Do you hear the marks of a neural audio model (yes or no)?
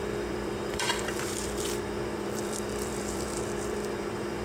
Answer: yes